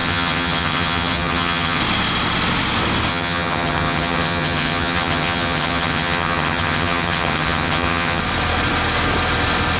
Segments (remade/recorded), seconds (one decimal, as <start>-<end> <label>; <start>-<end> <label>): 0.0-1.8 remade; 1.8-3.1 recorded; 3.1-8.2 remade; 8.2-9.8 recorded